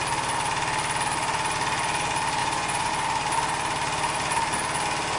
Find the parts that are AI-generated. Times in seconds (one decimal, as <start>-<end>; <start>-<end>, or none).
2.4-2.9